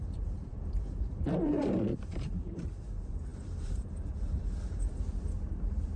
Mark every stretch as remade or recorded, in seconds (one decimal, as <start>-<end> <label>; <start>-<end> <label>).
0.0-6.0 remade